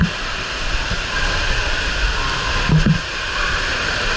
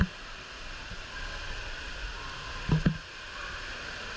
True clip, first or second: second